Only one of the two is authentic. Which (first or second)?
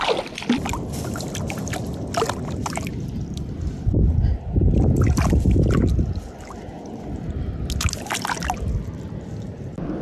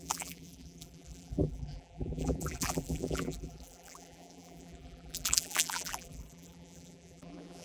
first